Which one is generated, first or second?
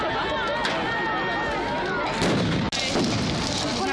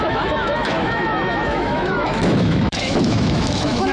second